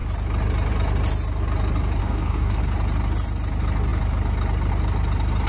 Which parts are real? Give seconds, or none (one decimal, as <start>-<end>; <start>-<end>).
0.0-2.0; 2.6-5.5